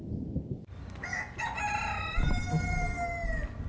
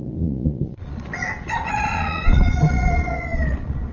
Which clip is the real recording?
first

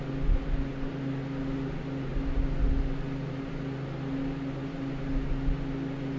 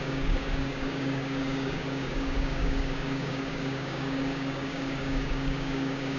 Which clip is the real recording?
first